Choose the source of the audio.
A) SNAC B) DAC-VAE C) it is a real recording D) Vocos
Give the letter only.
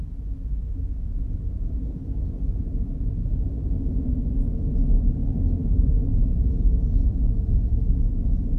C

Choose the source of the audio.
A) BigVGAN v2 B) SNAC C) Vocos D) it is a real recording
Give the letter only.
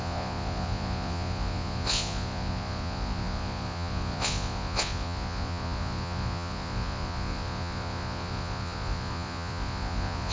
C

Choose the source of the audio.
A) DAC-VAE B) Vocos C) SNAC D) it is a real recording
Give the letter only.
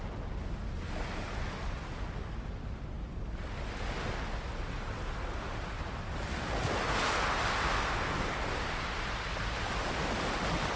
D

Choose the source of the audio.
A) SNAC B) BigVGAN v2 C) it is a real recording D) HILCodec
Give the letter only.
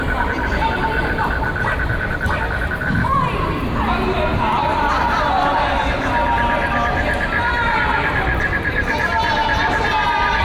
B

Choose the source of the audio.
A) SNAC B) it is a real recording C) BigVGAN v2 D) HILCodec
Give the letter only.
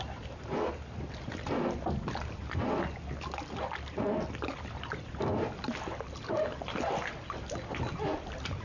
B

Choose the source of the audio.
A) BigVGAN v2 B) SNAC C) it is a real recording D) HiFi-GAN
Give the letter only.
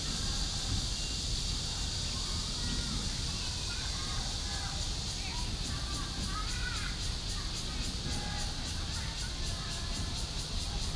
C